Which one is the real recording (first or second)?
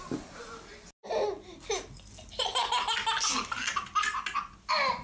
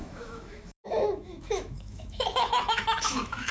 first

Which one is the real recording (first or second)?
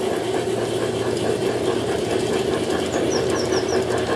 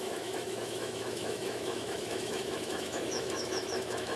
first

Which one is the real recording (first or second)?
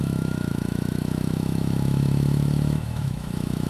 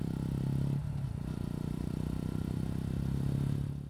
second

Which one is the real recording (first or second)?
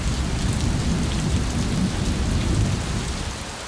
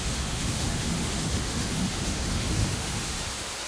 first